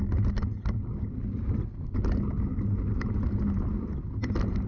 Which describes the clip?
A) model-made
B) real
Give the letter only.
B